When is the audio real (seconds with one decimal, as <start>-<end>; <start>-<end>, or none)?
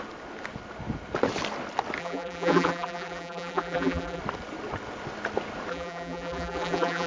0.0-2.0; 4.2-5.7